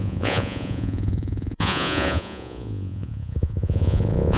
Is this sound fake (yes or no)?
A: yes